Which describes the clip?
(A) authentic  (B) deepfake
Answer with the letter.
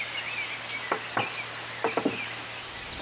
A